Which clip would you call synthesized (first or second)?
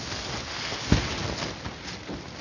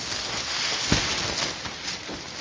second